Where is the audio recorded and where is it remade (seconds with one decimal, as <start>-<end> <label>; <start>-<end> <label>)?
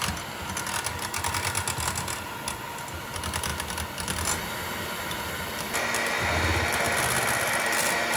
0.0-8.2 recorded